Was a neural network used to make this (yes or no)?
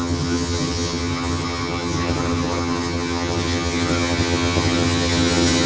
yes